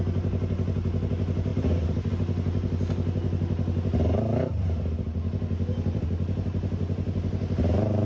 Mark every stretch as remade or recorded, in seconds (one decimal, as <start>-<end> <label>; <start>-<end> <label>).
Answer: 0.0-8.1 recorded